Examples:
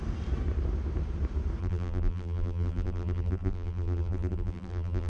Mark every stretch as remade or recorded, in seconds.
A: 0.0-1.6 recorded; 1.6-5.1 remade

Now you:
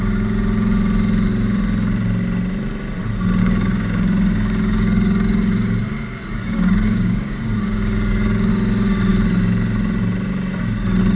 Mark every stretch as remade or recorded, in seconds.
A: 0.0-3.4 recorded; 3.4-8.5 remade; 8.5-11.2 recorded

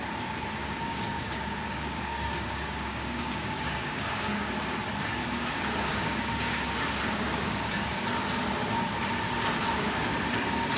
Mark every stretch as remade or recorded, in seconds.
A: 0.0-0.6 recorded; 0.6-4.5 remade; 4.5-5.2 recorded; 5.2-8.0 remade; 8.0-10.8 recorded

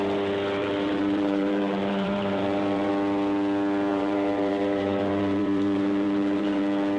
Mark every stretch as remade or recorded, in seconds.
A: 0.0-0.6 recorded; 0.6-2.9 remade; 2.9-3.9 recorded; 3.9-6.6 remade; 6.6-7.0 recorded

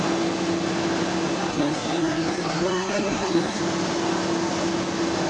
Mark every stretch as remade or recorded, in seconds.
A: 0.0-1.5 recorded; 1.5-3.6 remade; 3.6-5.3 recorded

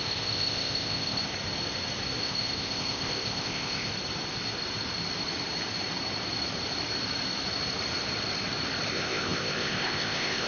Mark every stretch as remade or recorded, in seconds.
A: 0.0-1.3 remade; 1.3-2.2 recorded; 2.2-3.9 remade; 3.9-8.9 recorded; 8.9-10.5 remade